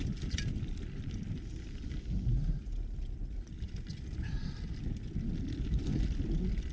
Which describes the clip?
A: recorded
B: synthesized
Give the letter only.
A